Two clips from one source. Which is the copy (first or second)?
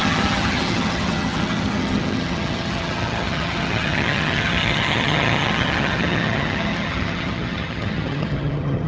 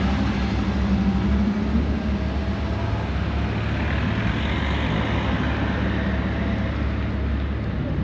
first